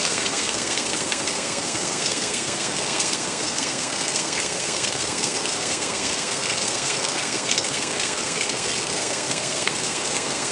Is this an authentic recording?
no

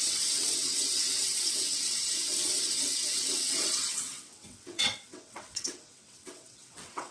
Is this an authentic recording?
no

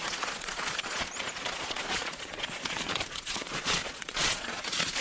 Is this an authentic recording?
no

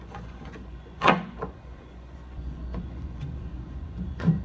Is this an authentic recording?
no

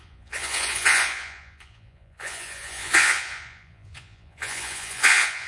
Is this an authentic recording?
no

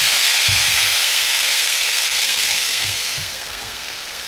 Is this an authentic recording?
no